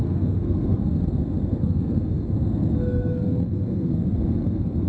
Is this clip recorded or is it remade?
remade